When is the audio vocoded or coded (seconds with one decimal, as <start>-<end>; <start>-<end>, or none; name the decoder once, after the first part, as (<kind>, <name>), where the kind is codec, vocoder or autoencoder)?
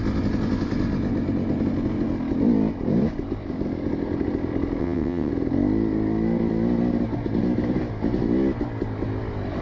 4.8-5.3 (vocoder, WaveNeXt)